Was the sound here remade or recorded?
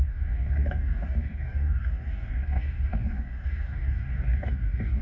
remade